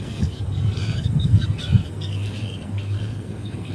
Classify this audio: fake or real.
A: fake